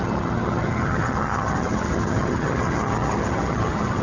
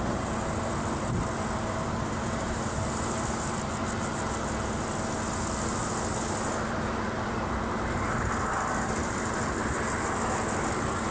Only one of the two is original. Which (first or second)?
second